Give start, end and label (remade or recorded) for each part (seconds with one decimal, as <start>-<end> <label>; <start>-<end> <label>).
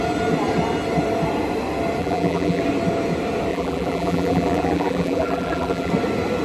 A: 0.0-2.0 recorded; 2.0-2.6 remade; 2.6-3.5 recorded; 3.5-5.9 remade; 5.9-6.4 recorded